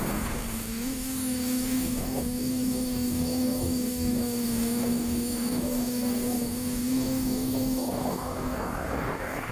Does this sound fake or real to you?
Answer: fake